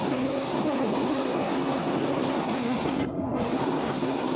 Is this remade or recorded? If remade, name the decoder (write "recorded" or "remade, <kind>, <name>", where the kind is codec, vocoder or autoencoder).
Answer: remade, codec, SNAC